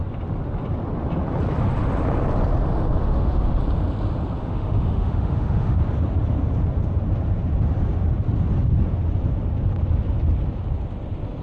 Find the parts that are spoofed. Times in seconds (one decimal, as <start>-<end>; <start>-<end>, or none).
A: 3.0-3.6; 4.4-5.8